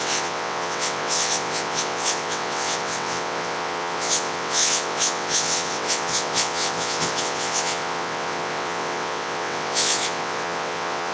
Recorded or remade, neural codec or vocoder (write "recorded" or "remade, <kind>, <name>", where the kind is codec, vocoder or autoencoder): remade, vocoder, WaveNeXt